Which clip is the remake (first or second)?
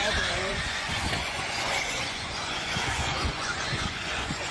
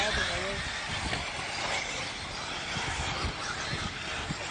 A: first